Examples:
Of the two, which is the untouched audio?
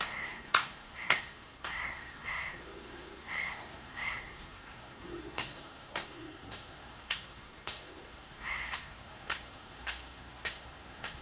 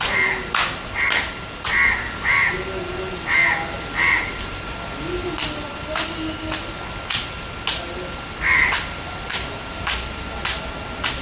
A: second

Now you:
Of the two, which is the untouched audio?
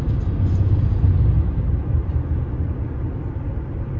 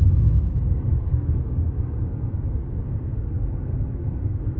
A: first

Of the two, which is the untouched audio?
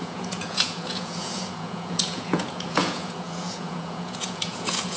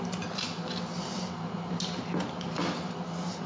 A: second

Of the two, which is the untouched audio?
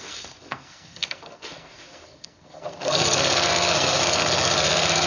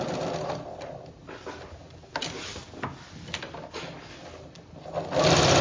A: second